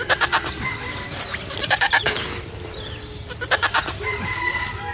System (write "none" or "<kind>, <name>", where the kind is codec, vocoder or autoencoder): vocoder, BigVGAN v2